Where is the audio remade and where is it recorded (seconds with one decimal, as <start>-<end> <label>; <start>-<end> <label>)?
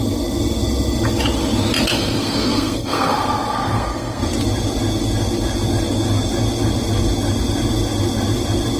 0.0-1.9 recorded; 1.9-4.2 remade; 4.2-8.8 recorded